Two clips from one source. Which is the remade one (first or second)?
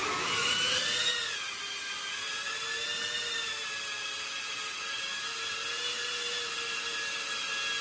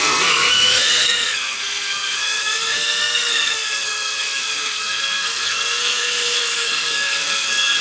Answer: second